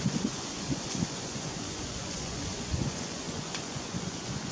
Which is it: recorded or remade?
remade